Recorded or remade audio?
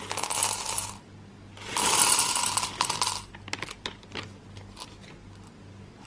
recorded